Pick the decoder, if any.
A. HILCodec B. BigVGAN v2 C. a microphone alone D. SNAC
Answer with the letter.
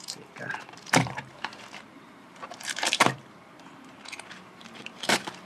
B